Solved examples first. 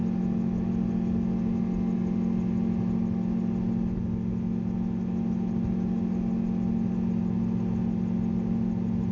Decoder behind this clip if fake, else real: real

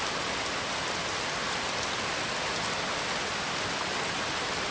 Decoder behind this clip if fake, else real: real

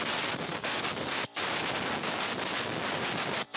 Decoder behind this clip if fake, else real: real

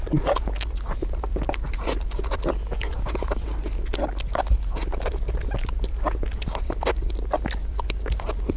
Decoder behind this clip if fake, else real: real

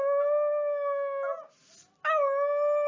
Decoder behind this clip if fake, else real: real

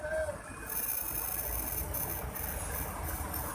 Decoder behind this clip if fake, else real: real